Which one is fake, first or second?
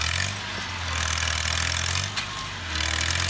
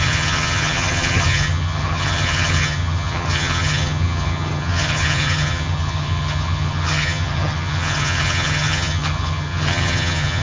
second